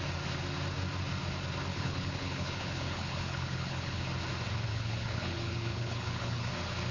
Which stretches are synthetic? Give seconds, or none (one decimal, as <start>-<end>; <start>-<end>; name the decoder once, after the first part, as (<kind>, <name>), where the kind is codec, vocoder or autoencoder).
1.7-4.0 (codec, HILCodec); 4.7-6.5